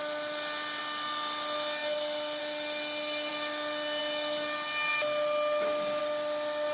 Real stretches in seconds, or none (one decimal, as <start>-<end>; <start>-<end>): 0.0-6.7